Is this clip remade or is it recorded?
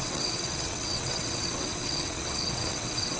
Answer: remade